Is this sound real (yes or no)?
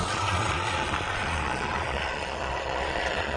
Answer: no